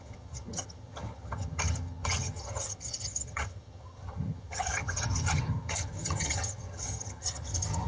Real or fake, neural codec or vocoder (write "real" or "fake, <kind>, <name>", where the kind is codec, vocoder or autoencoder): fake, vocoder, HiFi-GAN